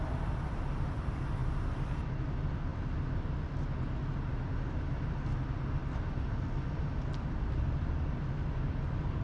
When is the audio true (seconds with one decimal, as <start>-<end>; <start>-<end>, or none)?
0.0-9.2